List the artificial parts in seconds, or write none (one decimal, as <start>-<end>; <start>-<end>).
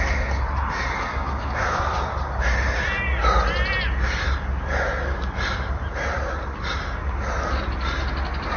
1.1-1.8